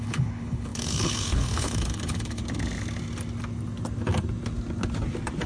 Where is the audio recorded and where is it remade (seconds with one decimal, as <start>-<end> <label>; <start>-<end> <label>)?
0.0-2.4 remade; 2.4-5.5 recorded